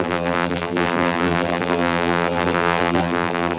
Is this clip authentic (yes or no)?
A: no